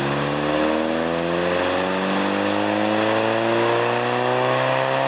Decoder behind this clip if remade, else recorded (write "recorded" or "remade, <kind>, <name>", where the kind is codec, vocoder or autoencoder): recorded